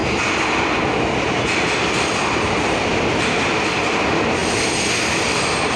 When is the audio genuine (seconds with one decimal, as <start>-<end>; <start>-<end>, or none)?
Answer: 0.0-5.8

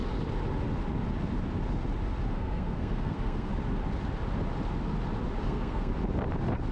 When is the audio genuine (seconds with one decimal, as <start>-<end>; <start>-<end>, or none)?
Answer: 0.0-2.3; 3.5-5.4; 5.9-6.7

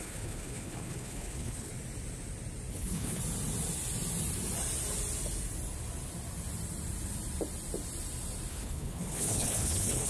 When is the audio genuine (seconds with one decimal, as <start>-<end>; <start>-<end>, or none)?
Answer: 1.7-2.7; 3.2-8.5